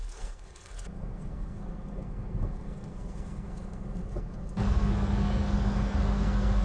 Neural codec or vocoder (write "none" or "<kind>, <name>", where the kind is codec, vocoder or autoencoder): codec, SNAC